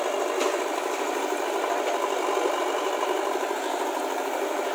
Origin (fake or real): real